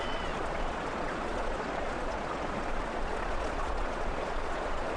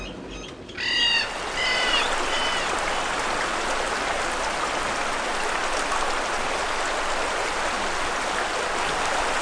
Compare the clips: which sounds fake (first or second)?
first